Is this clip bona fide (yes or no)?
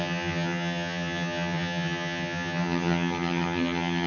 no